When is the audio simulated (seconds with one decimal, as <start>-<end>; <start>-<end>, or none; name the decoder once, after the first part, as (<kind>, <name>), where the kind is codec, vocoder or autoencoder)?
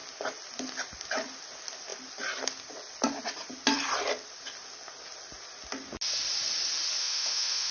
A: 7.0-7.7 (autoencoder, DAC-VAE)